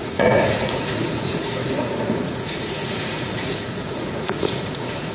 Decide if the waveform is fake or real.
fake